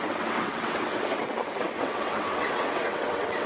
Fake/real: fake